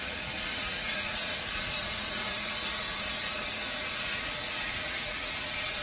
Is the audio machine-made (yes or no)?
yes